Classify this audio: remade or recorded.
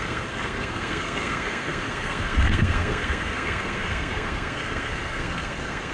remade